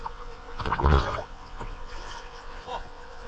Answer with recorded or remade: remade